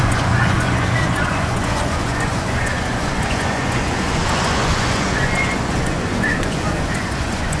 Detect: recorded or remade remade